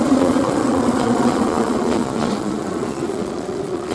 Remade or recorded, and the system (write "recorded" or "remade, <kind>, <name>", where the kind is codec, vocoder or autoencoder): remade, vocoder, Vocos